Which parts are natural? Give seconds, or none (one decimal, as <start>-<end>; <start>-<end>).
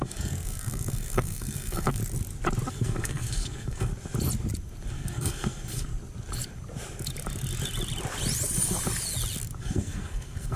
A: 2.0-2.7; 3.9-4.9; 5.9-9.6